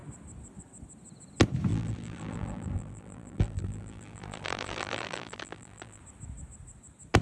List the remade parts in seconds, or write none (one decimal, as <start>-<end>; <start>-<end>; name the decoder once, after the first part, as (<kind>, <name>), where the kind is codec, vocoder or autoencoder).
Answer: 1.7-6.0 (vocoder, BigVGAN v2)